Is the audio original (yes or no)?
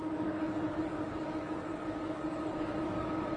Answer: no